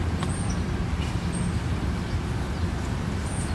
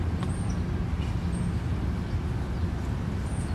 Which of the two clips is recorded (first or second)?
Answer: second